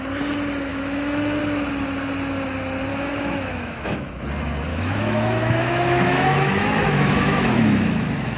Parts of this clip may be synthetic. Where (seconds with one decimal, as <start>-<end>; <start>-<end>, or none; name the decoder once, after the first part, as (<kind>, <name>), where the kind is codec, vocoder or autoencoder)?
0.7-1.4 (autoencoder, DAC-VAE); 2.9-4.1; 4.7-8.4